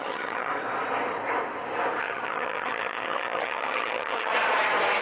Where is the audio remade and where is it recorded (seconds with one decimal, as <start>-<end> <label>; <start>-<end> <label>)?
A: 0.0-0.5 remade; 0.5-2.0 recorded; 2.0-4.3 remade; 4.3-5.0 recorded